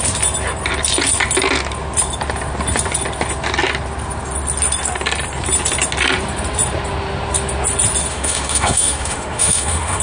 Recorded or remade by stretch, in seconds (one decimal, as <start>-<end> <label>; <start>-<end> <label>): 0.0-8.1 recorded; 8.1-10.0 remade